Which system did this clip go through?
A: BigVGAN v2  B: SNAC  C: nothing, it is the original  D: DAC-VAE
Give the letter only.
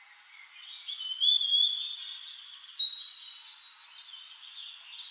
C